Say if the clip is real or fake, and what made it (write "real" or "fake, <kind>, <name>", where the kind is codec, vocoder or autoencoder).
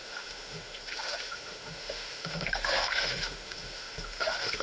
fake, autoencoder, DAC-VAE